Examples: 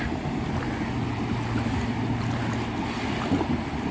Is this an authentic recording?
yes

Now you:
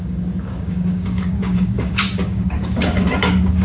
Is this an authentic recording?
no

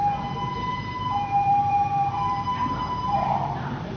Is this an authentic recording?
no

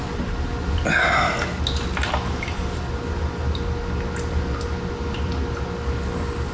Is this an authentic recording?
yes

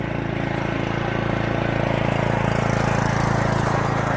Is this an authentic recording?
yes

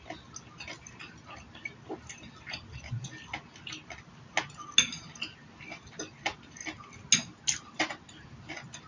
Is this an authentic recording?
yes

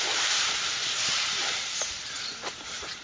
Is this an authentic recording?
no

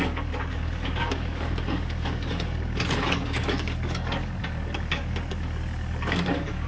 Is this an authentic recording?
no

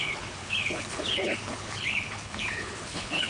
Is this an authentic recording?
no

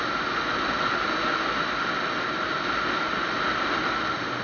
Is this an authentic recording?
yes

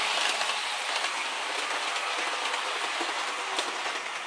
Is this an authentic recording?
yes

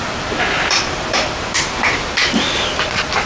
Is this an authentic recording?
no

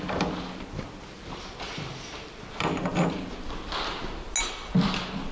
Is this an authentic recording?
yes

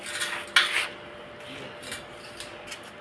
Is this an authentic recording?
yes